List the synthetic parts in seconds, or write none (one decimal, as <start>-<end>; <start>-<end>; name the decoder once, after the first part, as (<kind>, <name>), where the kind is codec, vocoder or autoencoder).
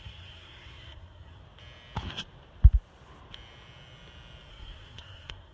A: 0.0-1.4 (codec, SNAC); 4.5-5.5